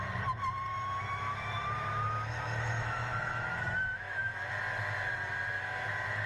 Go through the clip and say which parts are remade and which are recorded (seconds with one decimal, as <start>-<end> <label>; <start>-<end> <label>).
0.0-0.7 recorded; 0.7-4.5 remade; 4.5-6.3 recorded